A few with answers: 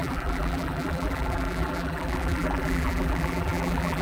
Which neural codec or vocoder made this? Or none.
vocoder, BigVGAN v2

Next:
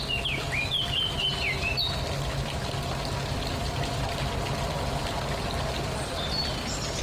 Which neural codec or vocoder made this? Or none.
none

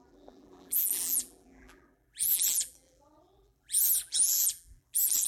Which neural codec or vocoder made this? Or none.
vocoder, BigVGAN v2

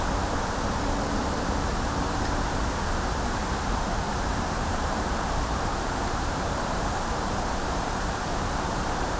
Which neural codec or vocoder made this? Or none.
vocoder, BigVGAN v2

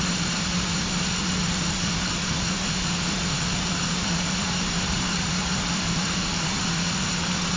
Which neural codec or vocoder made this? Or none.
vocoder, BigVGAN v2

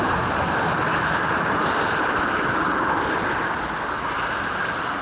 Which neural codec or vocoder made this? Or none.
none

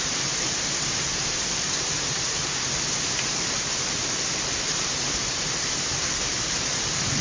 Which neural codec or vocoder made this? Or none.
vocoder, BigVGAN v2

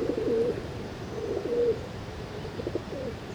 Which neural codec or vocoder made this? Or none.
vocoder, BigVGAN v2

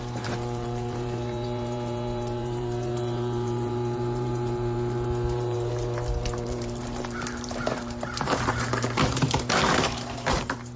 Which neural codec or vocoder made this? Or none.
vocoder, BigVGAN v2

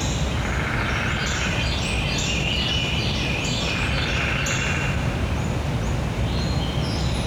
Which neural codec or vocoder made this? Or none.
none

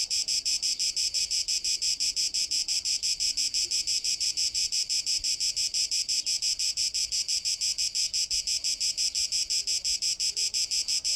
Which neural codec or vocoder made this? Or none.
vocoder, BigVGAN v2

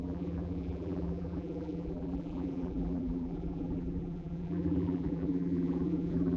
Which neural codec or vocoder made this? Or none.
vocoder, BigVGAN v2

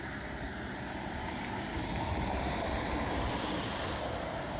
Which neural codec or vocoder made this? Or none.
vocoder, BigVGAN v2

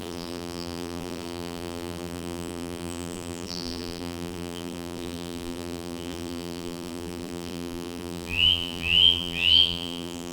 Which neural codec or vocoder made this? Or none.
vocoder, BigVGAN v2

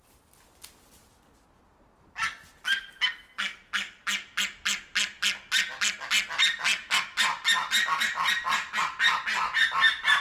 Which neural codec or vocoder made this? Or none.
none